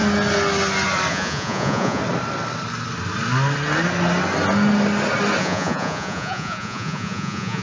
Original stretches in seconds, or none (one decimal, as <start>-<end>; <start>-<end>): 0.0-1.1; 2.0-5.4